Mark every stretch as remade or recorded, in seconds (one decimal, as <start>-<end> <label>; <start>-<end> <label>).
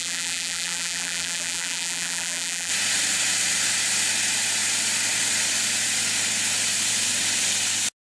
0.0-2.7 remade; 2.7-8.0 recorded